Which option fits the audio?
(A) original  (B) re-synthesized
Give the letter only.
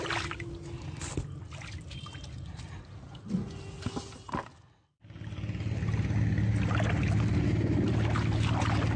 A